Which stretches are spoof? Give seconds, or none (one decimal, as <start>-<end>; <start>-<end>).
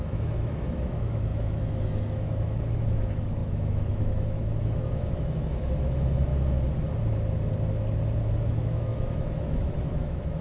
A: 0.0-6.3; 8.3-10.4